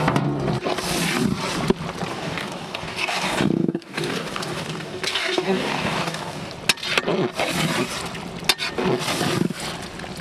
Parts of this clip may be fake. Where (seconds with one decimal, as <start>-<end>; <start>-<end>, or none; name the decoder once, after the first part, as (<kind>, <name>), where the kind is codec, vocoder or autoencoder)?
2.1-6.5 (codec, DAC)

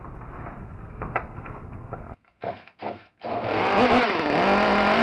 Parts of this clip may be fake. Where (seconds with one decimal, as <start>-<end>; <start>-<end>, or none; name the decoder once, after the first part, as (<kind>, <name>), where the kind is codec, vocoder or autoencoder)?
0.6-3.6 (codec, SNAC)

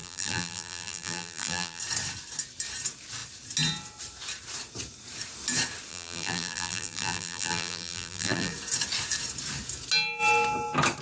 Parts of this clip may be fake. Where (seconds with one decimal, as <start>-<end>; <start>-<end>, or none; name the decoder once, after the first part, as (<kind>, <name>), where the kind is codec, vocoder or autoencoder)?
0.0-1.8 (vocoder, BigVGAN v2); 5.9-8.5

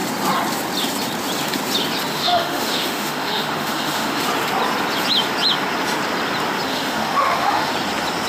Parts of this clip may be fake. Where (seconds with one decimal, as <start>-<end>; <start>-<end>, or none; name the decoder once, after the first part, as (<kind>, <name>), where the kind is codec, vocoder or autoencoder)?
2.1-4.2 (autoencoder, DAC-VAE); 6.7-7.7